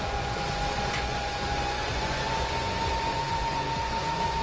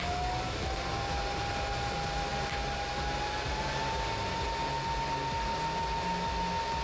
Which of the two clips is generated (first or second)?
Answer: first